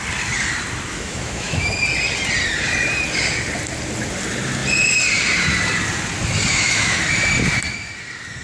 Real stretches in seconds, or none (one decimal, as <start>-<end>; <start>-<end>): 0.0-0.9; 1.7-6.5; 7.0-8.4